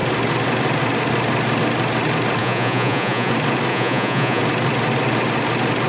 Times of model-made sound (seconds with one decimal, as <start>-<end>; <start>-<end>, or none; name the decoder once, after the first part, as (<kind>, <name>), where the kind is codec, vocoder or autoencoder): 2.4-3.3 (vocoder, Vocos); 3.7-4.4

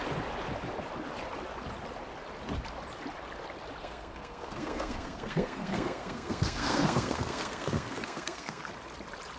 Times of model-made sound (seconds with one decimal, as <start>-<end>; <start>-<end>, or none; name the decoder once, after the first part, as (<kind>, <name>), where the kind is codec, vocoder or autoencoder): 3.8-8.7 (codec, SNAC)

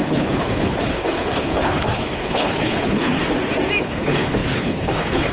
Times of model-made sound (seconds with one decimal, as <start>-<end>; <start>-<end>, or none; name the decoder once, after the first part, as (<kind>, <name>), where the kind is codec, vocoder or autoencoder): 0.0-3.2 (codec, HILCodec); 3.8-5.3

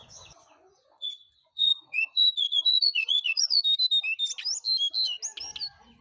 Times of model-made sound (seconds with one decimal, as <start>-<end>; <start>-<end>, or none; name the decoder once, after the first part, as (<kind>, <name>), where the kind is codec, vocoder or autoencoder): 0.0-3.6 (vocoder, Vocos)

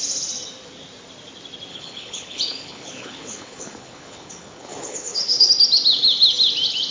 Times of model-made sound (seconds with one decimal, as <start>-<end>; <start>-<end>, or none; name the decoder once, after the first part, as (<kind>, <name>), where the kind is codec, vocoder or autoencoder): 1.7-5.5 (codec, HILCodec)